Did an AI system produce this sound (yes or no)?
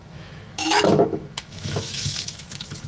yes